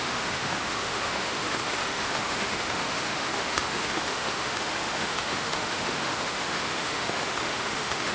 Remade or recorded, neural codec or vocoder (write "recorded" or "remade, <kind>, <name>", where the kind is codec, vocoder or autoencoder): remade, autoencoder, DAC-VAE